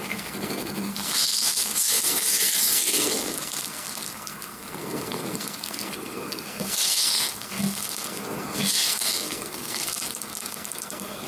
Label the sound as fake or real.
fake